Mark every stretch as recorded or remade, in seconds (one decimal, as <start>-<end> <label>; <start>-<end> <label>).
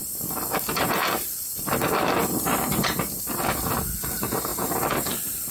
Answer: 0.0-4.5 remade; 4.5-5.5 recorded